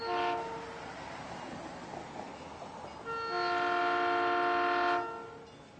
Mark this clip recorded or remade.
recorded